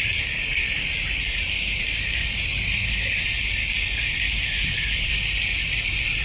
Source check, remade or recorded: recorded